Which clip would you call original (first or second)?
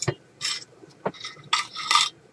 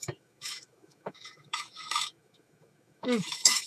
first